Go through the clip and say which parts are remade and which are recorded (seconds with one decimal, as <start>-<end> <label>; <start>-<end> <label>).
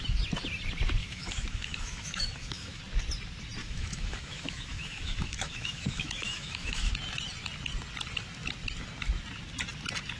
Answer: 0.0-1.0 recorded; 1.0-2.8 remade; 2.8-3.6 recorded; 3.6-6.9 remade; 6.9-10.2 recorded